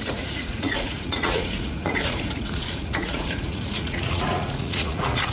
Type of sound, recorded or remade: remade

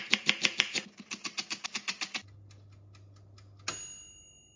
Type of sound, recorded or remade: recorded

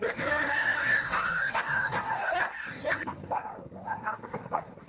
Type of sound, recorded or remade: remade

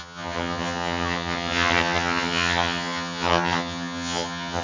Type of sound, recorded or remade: remade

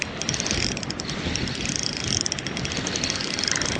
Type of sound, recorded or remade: recorded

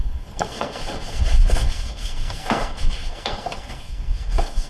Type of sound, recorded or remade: remade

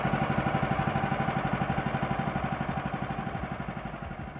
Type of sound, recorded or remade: recorded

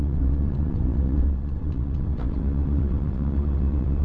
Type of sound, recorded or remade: remade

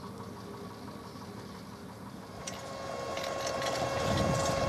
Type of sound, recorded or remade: recorded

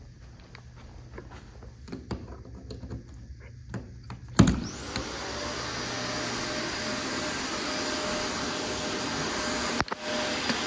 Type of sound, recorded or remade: recorded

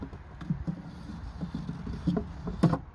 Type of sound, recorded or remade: recorded